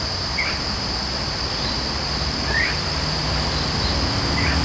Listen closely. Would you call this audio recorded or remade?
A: recorded